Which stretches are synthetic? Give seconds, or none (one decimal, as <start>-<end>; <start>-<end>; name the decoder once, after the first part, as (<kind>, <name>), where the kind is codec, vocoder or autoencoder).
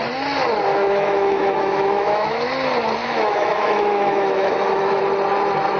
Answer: 0.7-2.5 (autoencoder, DAC-VAE); 3.0-5.0